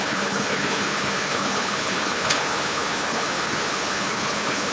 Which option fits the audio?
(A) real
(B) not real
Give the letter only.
B